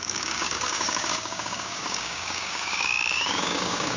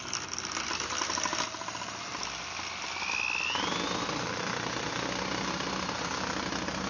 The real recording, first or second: second